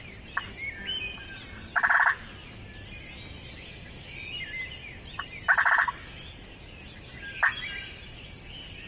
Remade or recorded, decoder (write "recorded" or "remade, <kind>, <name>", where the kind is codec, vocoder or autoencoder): recorded